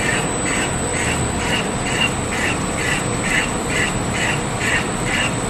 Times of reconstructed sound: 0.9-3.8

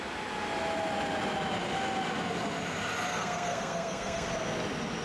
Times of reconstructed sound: 3.1-4.3

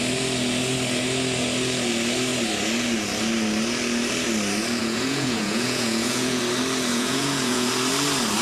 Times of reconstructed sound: 4.8-6.4; 6.9-7.7

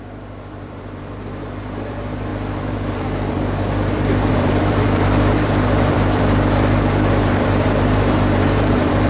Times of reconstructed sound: 0.0-9.1

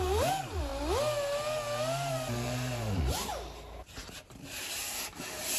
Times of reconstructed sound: 0.0-0.7; 2.1-3.3; 4.3-5.6

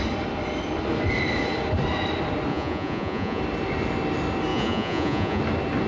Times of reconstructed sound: 2.5-3.4; 4.5-5.4

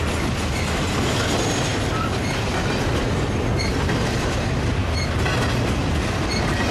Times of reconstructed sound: none

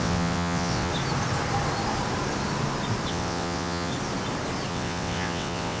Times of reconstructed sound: 0.0-0.9; 3.1-3.9; 4.7-5.8